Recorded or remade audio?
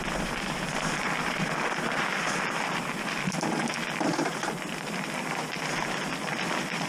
remade